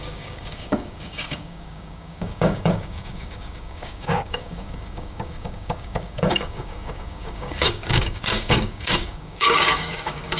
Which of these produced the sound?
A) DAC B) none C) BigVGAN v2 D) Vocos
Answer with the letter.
A